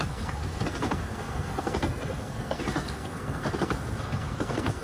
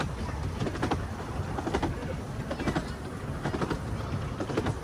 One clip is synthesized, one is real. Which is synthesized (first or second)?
first